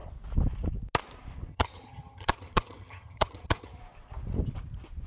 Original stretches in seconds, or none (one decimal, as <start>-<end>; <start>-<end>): 0.0-1.5; 3.8-5.1